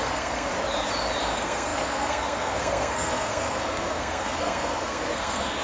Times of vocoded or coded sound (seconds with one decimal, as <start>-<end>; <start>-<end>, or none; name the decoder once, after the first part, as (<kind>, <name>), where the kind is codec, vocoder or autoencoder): 0.0-0.5 (codec, SNAC); 1.2-5.6